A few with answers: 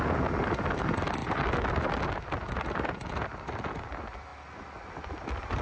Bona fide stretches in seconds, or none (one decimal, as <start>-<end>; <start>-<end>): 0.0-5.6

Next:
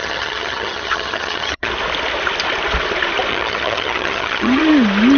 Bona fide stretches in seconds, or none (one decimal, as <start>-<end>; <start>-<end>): 1.7-3.3; 4.6-5.2

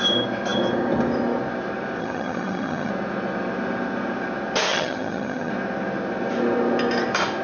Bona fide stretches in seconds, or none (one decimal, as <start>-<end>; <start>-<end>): 0.0-2.0; 2.9-4.7; 5.5-7.4

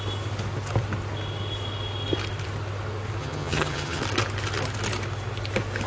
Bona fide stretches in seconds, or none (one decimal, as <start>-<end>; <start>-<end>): 0.0-3.2; 4.0-5.9

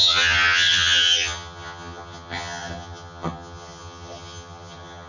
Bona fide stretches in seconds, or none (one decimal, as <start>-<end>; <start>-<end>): none

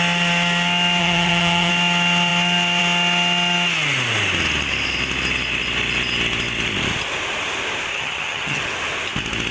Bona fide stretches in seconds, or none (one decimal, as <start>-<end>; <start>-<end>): 0.0-1.0; 1.7-7.9; 8.6-9.5